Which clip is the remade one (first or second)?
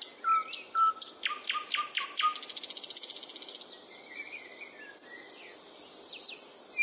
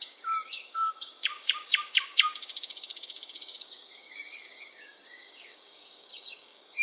second